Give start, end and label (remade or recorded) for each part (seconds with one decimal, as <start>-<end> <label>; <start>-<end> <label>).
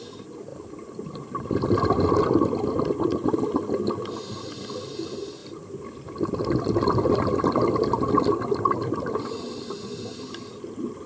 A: 0.0-11.1 recorded